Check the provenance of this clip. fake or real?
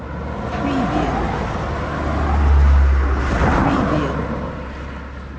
real